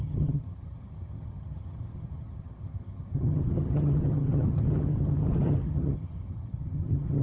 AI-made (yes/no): yes